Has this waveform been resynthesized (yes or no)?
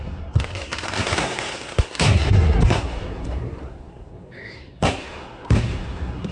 yes